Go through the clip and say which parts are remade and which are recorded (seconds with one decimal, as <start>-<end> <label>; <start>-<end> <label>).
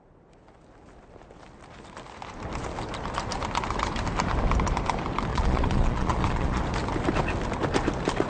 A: 0.0-5.3 recorded; 5.3-6.6 remade; 6.6-8.3 recorded